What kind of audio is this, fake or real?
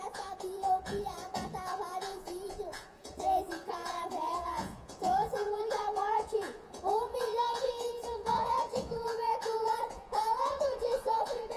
fake